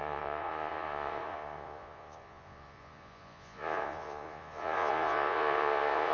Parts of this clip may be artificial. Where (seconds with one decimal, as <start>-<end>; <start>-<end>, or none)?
0.0-6.1